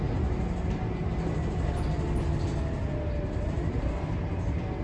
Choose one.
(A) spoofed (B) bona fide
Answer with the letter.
B